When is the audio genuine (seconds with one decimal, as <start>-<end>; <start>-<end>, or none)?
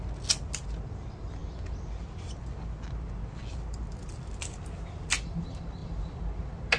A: 0.0-6.8